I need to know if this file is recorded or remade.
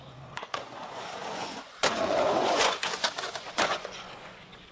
remade